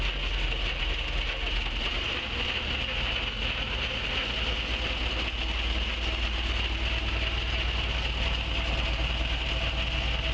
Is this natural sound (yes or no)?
yes